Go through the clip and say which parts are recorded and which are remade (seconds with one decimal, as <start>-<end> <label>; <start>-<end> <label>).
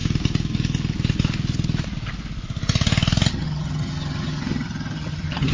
0.0-3.3 recorded; 3.3-5.5 remade